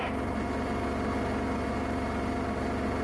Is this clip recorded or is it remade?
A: recorded